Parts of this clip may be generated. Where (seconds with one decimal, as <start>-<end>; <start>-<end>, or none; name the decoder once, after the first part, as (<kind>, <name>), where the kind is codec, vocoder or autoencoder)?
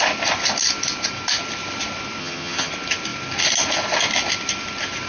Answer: 2.2-2.7 (vocoder, HiFi-GAN)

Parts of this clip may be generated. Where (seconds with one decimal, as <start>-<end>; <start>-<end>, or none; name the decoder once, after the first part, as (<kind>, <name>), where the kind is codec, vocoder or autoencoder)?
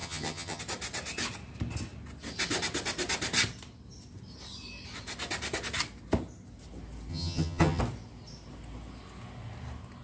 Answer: 0.0-0.6 (vocoder, HiFi-GAN); 7.1-7.8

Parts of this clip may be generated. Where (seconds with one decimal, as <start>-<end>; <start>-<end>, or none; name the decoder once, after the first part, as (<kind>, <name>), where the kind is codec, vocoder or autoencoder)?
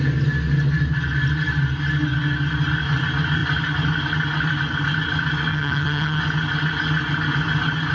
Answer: 5.5-6.2 (vocoder, HiFi-GAN)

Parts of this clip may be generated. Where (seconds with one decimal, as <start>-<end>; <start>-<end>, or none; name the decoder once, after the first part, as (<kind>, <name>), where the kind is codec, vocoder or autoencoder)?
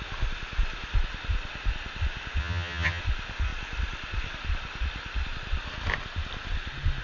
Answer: 2.4-3.0 (vocoder, HiFi-GAN)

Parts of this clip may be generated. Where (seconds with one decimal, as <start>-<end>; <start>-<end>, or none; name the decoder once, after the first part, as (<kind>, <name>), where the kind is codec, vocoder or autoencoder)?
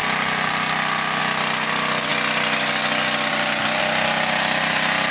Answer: none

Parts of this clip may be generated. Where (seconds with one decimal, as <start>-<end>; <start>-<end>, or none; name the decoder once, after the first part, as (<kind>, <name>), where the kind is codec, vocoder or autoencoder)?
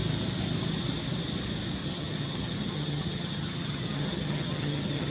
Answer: 1.8-5.1 (vocoder, HiFi-GAN)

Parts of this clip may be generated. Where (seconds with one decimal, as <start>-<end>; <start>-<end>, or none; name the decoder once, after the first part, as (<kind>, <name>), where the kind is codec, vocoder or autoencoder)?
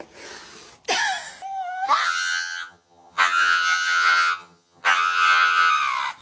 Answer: 2.0-5.7 (vocoder, HiFi-GAN)